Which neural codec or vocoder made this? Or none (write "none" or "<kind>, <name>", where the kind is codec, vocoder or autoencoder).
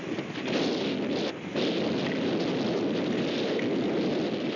none